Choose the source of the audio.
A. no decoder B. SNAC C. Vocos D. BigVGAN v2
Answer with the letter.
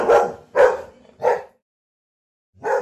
D